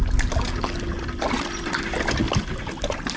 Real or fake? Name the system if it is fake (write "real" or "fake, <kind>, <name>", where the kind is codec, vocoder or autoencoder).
real